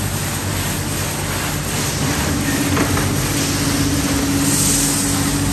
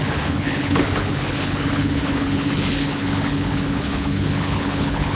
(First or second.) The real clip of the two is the first